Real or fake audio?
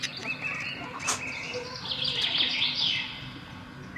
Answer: real